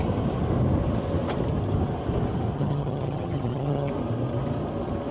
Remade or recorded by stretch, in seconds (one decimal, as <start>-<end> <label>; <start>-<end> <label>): 0.0-2.5 recorded; 2.5-3.9 remade; 3.9-5.1 recorded